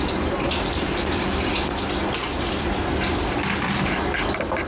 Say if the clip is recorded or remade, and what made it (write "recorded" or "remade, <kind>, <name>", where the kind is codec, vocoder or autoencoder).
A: recorded